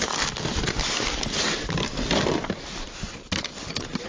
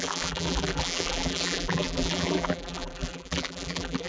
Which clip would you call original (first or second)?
first